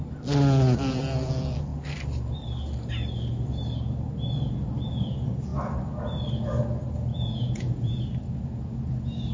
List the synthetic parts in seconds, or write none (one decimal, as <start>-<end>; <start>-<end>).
7.1-8.0